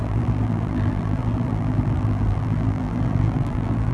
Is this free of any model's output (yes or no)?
no